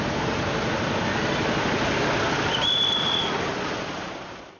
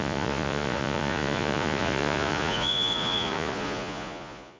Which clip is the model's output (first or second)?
second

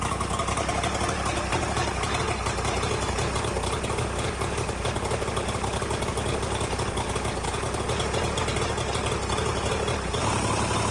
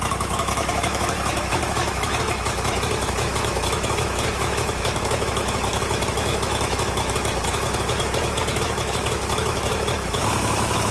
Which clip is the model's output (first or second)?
second